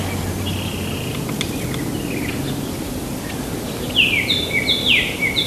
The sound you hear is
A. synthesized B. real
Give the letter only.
B